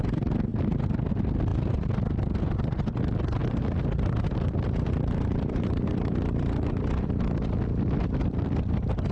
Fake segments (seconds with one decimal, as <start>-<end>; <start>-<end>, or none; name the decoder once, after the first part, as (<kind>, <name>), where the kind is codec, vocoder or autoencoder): 0.5-1.1 (vocoder, BigVGAN v2); 1.5-2.0; 3.4-7.1